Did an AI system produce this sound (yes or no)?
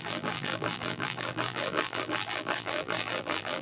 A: yes